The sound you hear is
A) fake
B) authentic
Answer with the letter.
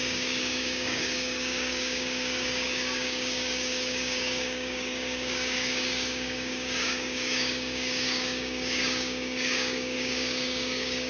A